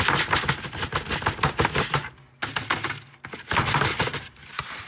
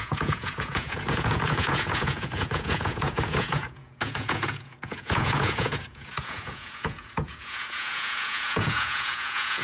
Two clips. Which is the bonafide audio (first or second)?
first